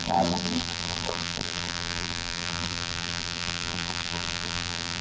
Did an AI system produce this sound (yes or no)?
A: yes